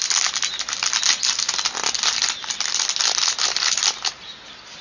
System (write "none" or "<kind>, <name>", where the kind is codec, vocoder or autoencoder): none